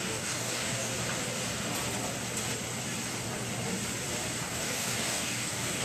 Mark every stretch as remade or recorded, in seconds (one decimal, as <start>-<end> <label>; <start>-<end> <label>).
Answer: 0.0-0.9 remade; 0.9-4.4 recorded; 4.4-5.8 remade

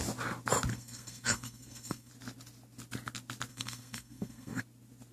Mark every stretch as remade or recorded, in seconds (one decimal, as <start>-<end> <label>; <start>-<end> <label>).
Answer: 0.0-0.7 recorded; 0.7-2.1 remade; 2.1-3.5 recorded; 3.5-4.6 remade; 4.6-5.1 recorded

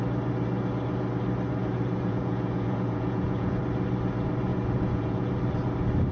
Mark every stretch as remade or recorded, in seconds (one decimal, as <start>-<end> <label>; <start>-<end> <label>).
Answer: 0.0-1.6 recorded; 1.6-3.6 remade; 3.6-4.5 recorded; 4.5-5.3 remade; 5.3-6.1 recorded

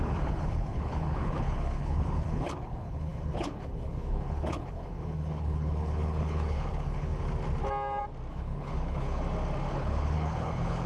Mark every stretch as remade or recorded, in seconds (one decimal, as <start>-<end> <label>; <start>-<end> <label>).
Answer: 0.0-7.1 remade; 7.1-8.3 recorded; 8.3-9.2 remade; 9.2-9.7 recorded; 9.7-10.9 remade

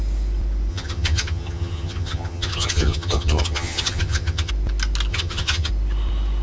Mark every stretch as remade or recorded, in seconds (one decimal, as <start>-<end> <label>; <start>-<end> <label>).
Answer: 0.0-0.7 recorded; 0.7-4.5 remade; 4.5-5.1 recorded; 5.1-5.7 remade; 5.7-6.4 recorded

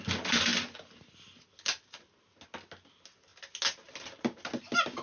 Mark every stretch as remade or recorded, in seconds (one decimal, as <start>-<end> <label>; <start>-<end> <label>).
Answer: 0.0-5.0 recorded

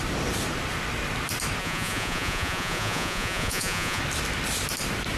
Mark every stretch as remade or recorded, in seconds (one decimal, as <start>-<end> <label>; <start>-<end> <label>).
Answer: 0.0-1.6 recorded; 1.6-4.0 remade; 4.0-5.2 recorded